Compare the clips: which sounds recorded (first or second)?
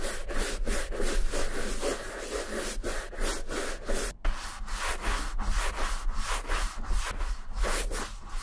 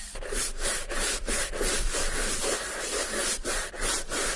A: first